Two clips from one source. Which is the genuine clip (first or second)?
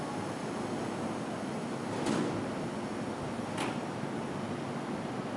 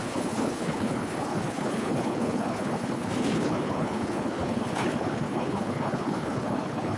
first